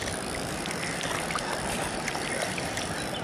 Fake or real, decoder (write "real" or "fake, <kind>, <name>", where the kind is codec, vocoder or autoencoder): real